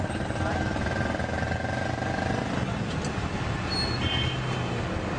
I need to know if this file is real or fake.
real